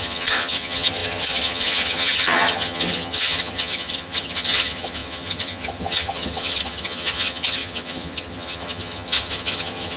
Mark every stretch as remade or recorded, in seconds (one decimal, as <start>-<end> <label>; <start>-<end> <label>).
0.0-10.0 remade